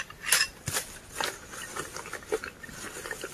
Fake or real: real